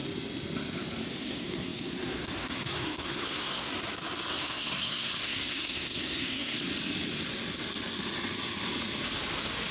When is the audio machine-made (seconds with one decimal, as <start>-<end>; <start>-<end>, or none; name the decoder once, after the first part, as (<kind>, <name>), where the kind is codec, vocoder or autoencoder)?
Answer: 1.1-3.7 (codec, SNAC); 4.3-6.7